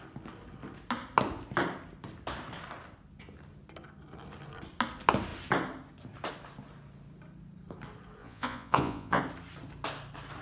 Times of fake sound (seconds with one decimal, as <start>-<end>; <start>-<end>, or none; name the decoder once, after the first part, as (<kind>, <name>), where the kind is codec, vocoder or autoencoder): 8.2-9.2 (vocoder, Vocos)